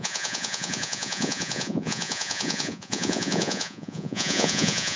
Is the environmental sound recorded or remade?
remade